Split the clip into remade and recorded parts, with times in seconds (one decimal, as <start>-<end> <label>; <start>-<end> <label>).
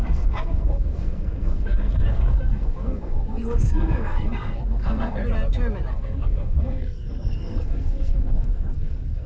0.0-5.2 remade; 5.2-5.9 recorded; 5.9-9.3 remade